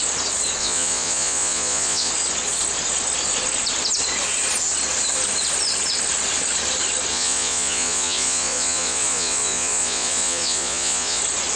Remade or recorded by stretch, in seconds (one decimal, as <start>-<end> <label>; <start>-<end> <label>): 0.0-0.6 recorded; 0.6-2.1 remade; 2.1-7.1 recorded; 7.1-11.2 remade; 11.2-11.6 recorded